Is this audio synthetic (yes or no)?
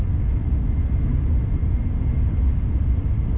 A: no